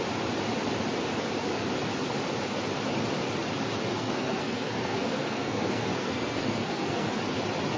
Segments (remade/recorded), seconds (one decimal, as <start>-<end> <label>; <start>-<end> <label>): 0.0-3.9 recorded; 3.9-7.2 remade; 7.2-7.8 recorded